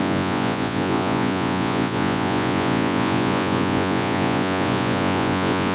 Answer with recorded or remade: remade